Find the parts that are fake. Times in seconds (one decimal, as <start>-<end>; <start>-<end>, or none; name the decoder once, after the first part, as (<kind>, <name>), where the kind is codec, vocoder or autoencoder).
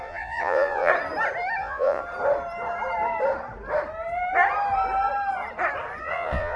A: 0.0-0.9 (vocoder, Vocos); 1.6-2.0; 6.0-6.6